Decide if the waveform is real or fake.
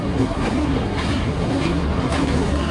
fake